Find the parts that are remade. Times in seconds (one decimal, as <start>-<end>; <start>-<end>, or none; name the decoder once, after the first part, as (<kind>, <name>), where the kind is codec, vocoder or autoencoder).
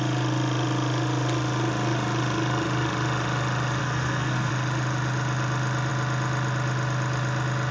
3.8-4.5 (codec, SNAC)